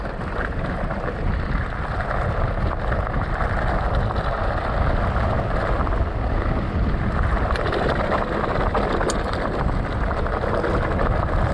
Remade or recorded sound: recorded